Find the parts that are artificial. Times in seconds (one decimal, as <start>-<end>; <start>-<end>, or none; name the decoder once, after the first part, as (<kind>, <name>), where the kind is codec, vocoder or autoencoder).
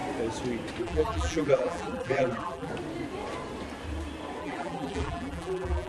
0.8-2.7 (vocoder, BigVGAN v2); 4.4-5.9